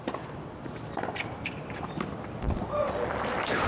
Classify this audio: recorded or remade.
remade